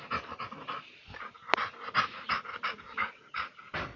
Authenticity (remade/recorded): recorded